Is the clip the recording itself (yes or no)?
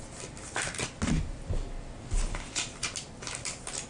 yes